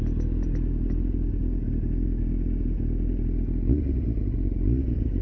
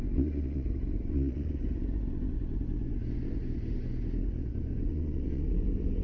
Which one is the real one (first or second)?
first